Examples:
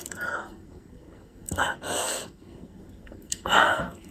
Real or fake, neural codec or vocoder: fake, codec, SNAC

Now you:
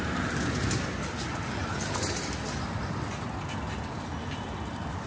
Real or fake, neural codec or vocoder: real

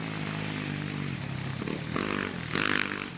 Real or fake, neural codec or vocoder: real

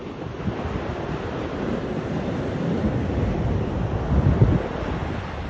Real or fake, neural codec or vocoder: real